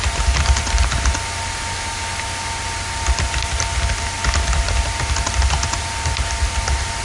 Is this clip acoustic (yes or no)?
yes